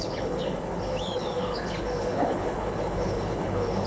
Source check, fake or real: fake